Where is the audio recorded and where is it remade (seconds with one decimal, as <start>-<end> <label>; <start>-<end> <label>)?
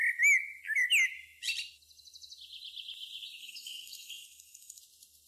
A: 0.0-3.4 recorded; 3.4-4.8 remade; 4.8-5.3 recorded